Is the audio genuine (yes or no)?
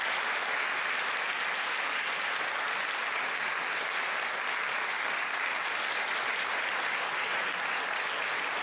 yes